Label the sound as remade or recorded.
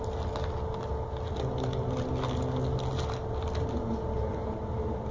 recorded